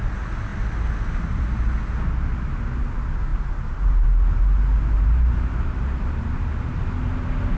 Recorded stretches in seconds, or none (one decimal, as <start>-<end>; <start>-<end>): 0.0-3.3; 6.8-7.6